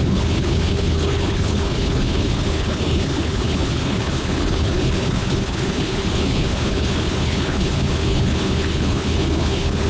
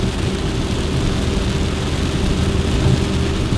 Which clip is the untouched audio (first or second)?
second